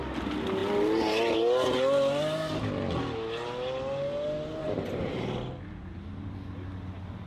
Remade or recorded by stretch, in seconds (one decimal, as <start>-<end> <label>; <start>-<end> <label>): 0.0-4.6 recorded; 4.6-5.4 remade; 5.4-7.3 recorded